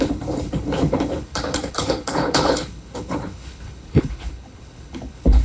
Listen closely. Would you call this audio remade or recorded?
remade